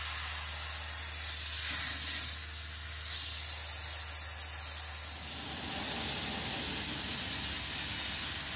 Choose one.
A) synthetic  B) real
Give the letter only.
B